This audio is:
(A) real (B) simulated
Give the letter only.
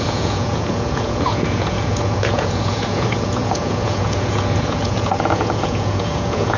B